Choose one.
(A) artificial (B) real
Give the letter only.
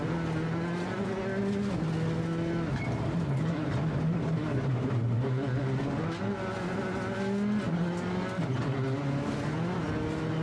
B